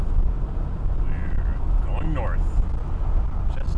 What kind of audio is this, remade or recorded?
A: recorded